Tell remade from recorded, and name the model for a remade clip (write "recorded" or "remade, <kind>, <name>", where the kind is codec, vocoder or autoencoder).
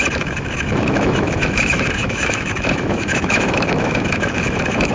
remade, autoencoder, DAC-VAE